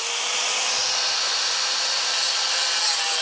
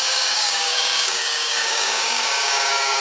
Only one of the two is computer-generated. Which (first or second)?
second